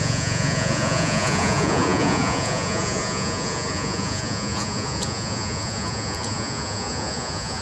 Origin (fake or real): fake